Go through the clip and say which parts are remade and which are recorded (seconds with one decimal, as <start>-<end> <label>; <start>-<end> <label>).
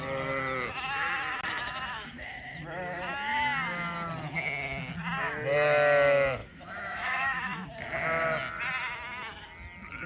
0.0-6.4 recorded; 6.4-7.7 remade; 7.7-10.1 recorded